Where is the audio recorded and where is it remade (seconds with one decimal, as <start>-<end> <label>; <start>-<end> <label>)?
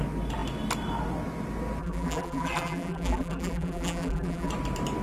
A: 0.0-1.8 recorded; 1.8-4.5 remade; 4.5-5.0 recorded